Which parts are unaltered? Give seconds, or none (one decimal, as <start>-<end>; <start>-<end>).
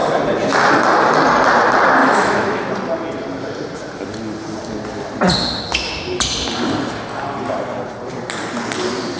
0.0-2.0; 2.7-9.2